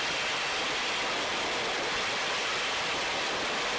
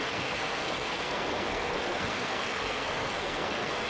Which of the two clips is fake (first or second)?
second